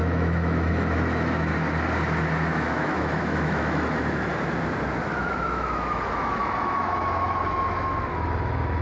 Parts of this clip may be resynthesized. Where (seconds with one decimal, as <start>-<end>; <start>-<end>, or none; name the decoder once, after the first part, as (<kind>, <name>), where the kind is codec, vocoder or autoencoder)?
0.0-1.5 (autoencoder, DAC-VAE); 2.5-4.3; 5.1-8.8